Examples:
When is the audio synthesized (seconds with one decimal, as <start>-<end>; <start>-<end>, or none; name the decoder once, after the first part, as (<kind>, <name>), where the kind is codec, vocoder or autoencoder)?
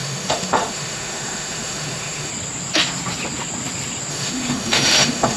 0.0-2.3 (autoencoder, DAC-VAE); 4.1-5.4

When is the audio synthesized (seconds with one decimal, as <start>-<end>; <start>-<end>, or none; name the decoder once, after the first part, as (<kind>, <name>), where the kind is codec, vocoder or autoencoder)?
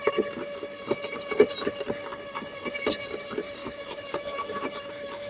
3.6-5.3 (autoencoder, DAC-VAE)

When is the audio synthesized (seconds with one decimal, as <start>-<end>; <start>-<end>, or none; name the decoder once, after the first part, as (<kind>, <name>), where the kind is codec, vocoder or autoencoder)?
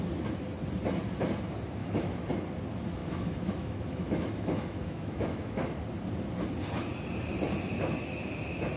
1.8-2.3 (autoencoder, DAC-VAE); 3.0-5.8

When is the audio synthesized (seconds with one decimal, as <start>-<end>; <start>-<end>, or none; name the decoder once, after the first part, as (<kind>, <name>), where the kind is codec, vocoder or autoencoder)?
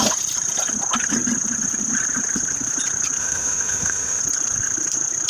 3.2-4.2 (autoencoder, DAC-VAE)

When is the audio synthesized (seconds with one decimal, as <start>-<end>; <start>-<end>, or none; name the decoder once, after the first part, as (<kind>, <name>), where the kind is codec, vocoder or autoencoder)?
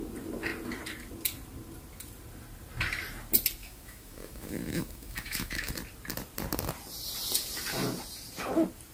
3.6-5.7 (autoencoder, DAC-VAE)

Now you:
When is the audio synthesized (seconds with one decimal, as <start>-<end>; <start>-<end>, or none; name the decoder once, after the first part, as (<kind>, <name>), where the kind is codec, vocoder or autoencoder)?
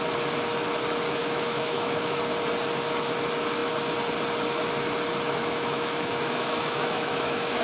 1.2-2.2 (autoencoder, DAC-VAE); 5.4-7.6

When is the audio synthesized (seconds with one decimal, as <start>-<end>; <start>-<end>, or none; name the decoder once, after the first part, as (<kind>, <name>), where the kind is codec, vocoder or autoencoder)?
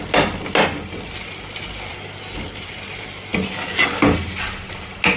none